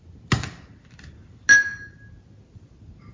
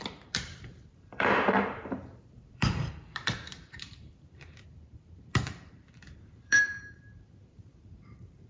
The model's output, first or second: second